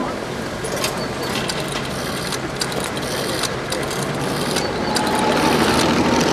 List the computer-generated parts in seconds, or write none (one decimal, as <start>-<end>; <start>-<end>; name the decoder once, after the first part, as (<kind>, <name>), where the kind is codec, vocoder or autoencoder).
none